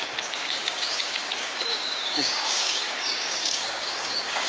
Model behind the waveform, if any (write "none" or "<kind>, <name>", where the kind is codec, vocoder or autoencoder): codec, DAC